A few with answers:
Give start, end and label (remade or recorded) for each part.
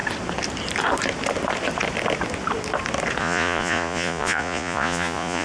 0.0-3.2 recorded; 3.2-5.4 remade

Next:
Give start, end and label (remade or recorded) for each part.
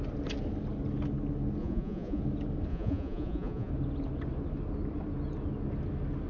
0.0-1.6 recorded; 1.6-2.2 remade; 2.2-2.7 recorded; 2.7-3.7 remade; 3.7-6.3 recorded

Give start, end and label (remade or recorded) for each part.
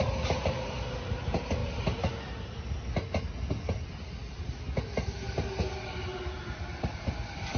0.0-7.6 recorded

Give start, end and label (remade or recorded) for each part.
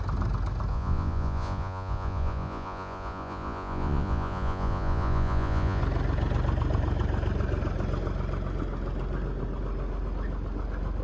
0.0-0.7 recorded; 0.7-5.8 remade; 5.8-11.0 recorded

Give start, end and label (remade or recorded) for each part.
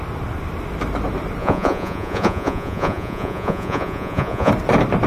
0.0-1.4 recorded; 1.4-4.5 remade; 4.5-5.1 recorded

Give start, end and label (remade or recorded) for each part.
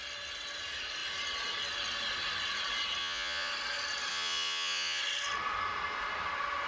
0.0-3.0 recorded; 3.0-3.5 remade; 3.5-4.1 recorded; 4.1-5.0 remade; 5.0-6.7 recorded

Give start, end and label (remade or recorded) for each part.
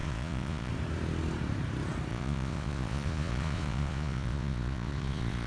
0.0-0.7 remade; 0.7-2.1 recorded; 2.1-5.5 remade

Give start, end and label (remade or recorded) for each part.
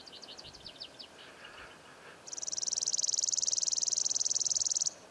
0.0-5.1 recorded